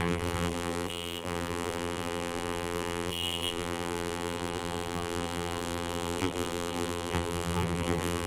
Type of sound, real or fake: fake